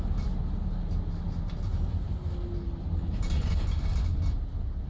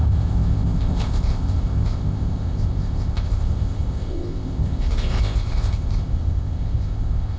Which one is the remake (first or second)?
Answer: second